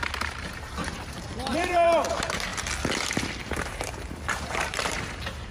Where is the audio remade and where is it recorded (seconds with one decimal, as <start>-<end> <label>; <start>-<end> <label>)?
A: 0.0-2.5 remade; 2.5-3.4 recorded; 3.4-5.5 remade